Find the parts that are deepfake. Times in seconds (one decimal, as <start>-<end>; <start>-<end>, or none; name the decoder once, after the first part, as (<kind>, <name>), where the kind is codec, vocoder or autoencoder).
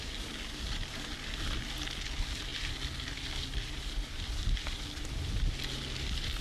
none